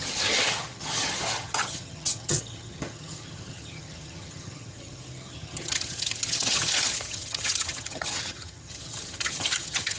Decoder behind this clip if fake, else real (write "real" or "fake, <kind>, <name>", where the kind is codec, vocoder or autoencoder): fake, vocoder, HiFi-GAN